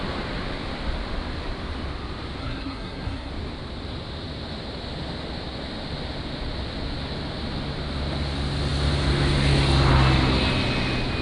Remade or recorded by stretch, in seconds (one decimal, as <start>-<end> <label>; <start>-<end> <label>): 0.0-2.4 recorded; 2.4-3.3 remade; 3.3-11.2 recorded